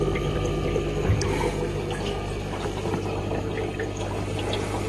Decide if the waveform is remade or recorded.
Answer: recorded